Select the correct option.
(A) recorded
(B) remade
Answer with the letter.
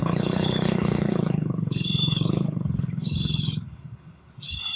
B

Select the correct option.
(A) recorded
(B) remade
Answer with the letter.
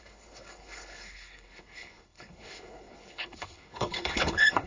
B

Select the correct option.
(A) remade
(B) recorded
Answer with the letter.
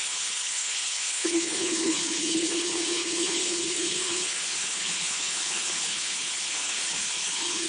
A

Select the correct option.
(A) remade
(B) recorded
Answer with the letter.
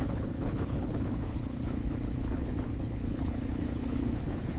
A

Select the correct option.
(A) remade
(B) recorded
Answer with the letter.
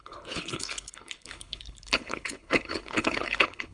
A